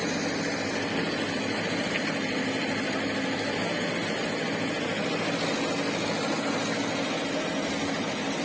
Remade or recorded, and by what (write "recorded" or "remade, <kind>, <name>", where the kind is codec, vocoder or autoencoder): recorded